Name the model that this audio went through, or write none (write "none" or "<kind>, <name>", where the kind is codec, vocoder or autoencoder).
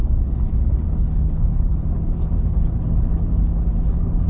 codec, HILCodec